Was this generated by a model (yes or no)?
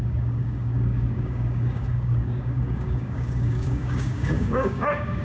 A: yes